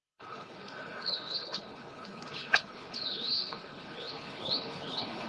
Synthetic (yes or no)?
yes